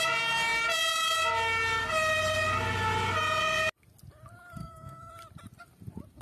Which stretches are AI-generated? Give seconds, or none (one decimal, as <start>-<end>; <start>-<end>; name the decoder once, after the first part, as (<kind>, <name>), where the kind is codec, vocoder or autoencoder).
4.6-5.1 (codec, SNAC)